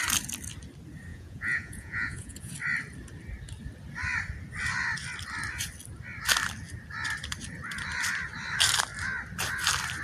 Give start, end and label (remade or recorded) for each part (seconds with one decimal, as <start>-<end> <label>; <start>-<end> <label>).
0.0-1.1 recorded; 1.1-2.5 remade; 2.5-10.0 recorded